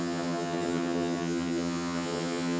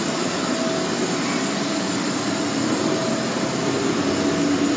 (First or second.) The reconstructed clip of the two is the first